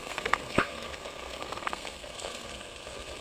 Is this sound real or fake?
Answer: fake